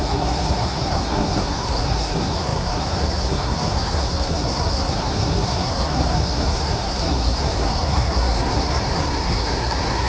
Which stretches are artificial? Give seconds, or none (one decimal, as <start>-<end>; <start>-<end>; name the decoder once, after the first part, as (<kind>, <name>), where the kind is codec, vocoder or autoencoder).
0.0-10.1 (codec, SNAC)

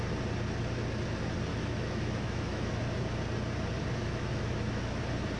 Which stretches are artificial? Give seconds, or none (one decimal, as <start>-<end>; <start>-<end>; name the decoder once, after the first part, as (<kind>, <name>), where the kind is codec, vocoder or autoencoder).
1.5-2.8 (autoencoder, DAC-VAE); 4.0-5.0

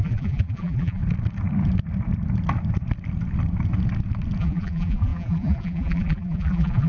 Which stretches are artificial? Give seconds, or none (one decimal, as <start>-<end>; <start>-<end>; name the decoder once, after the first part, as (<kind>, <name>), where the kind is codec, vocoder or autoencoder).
0.0-1.0 (vocoder, BigVGAN v2); 4.4-6.9

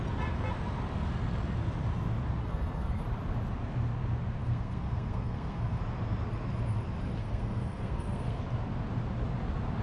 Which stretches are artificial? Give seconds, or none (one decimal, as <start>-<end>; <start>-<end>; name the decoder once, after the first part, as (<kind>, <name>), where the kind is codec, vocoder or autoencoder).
2.4-3.0 (codec, SNAC); 4.4-5.8; 7.2-8.4